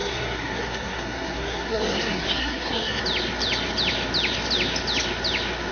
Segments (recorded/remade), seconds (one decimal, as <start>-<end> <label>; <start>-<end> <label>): 0.0-3.0 remade; 3.0-5.7 recorded